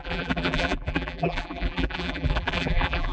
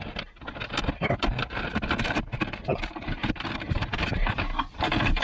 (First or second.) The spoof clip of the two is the first